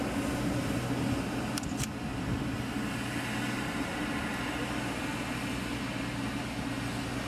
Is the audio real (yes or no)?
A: yes